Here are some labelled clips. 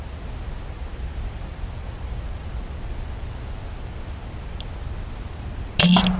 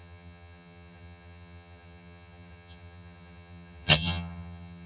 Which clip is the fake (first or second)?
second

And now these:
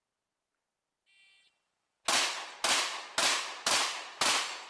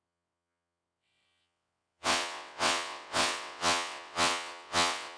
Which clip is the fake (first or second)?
second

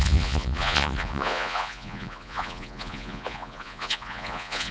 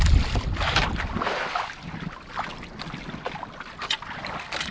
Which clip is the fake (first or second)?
first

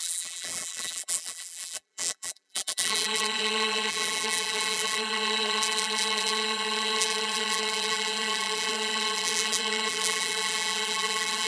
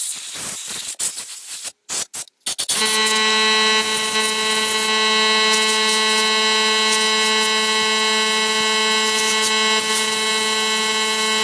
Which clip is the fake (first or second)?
first